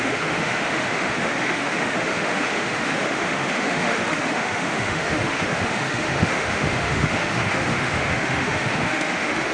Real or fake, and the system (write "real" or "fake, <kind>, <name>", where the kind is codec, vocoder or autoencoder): fake, autoencoder, DAC-VAE